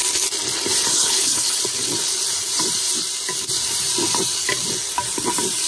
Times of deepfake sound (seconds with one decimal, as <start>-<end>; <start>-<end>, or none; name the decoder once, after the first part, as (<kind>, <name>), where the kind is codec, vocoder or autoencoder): 0.9-1.6 (codec, HILCodec)